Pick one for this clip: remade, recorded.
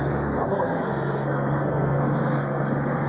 remade